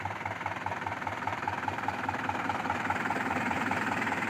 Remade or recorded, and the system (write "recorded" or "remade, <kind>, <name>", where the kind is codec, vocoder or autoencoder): remade, vocoder, BigVGAN v2